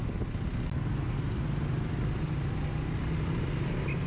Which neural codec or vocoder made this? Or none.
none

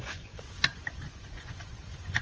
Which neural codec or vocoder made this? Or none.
vocoder, Vocos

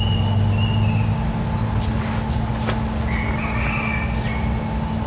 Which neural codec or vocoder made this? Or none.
none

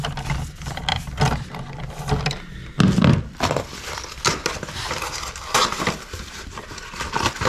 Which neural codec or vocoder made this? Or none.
none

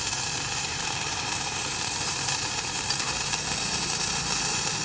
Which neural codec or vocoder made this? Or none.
vocoder, BigVGAN v2